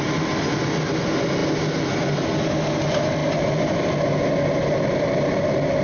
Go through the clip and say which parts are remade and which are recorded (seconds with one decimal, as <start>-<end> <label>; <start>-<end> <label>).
0.0-5.8 recorded